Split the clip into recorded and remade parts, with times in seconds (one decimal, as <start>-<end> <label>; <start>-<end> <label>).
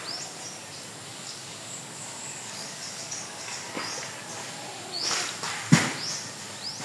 0.0-1.1 recorded; 1.1-3.8 remade; 3.8-6.8 recorded